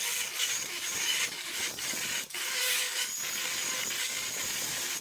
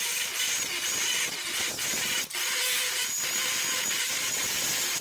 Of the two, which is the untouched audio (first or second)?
second